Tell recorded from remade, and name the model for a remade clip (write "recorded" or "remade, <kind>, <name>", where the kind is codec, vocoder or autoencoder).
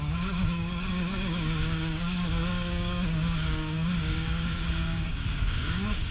remade, codec, DAC